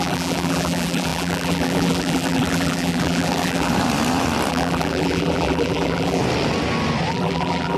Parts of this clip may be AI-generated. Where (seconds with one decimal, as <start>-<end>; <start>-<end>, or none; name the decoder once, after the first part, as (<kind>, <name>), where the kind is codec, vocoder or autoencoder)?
0.0-3.7 (vocoder, BigVGAN v2); 4.5-6.2; 7.1-7.8